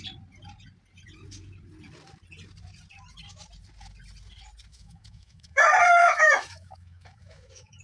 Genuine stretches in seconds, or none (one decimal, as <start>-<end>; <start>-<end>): 0.0-4.7; 5.6-6.0

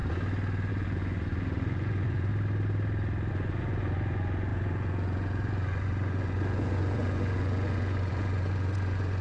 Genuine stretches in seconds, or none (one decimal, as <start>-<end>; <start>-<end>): 0.0-0.7; 2.3-3.3

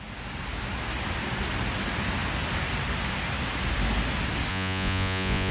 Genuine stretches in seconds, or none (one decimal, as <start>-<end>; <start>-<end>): 0.0-4.5

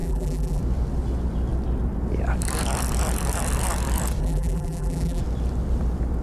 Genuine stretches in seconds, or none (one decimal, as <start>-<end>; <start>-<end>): 0.6-4.2; 5.2-6.2

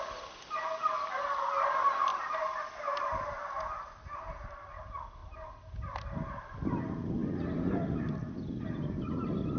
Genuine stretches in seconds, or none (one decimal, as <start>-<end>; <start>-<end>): 0.0-9.6

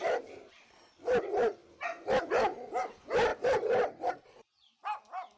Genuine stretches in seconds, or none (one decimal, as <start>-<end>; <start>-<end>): 0.0-5.4

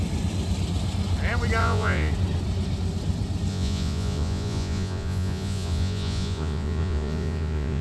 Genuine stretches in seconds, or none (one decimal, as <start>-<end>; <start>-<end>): 0.0-1.6; 2.1-3.5

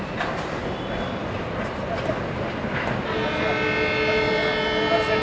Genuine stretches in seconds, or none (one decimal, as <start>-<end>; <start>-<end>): 0.0-5.2